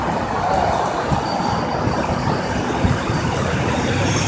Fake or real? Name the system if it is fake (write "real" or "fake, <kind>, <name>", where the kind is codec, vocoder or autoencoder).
fake, vocoder, BigVGAN v2